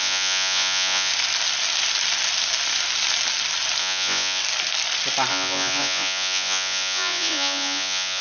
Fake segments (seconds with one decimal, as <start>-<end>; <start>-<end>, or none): 0.0-1.1; 3.8-4.4; 5.3-8.2

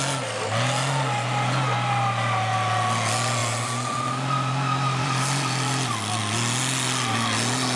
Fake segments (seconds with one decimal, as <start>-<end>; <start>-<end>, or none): 3.4-6.2

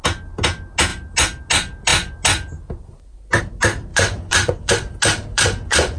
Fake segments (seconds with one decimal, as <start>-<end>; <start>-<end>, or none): 3.9-4.7; 5.3-6.0

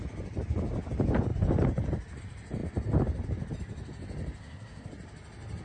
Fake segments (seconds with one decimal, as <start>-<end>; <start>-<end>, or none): 4.4-4.9